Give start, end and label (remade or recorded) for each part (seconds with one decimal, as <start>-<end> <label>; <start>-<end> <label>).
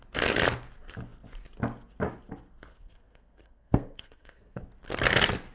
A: 0.0-2.7 recorded; 2.7-4.6 remade; 4.6-5.5 recorded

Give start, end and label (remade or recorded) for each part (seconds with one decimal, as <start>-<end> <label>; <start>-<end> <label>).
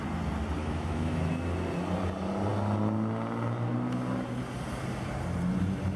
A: 0.0-0.6 recorded; 0.6-1.2 remade; 1.2-6.0 recorded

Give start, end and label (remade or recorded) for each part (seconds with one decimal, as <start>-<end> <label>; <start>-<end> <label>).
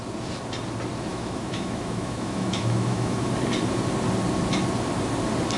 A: 0.0-1.1 recorded; 1.1-3.3 remade; 3.3-5.6 recorded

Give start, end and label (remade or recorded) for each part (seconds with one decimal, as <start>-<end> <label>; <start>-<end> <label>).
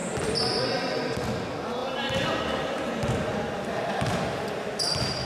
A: 0.0-1.8 recorded; 1.8-5.3 remade